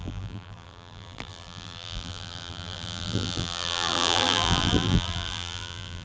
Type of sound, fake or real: fake